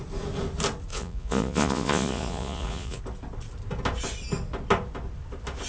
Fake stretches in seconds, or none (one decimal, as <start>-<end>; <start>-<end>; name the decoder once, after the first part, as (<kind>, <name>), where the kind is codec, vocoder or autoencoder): 0.9-3.0 (vocoder, Vocos)